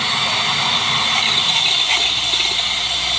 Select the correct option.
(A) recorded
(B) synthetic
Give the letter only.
A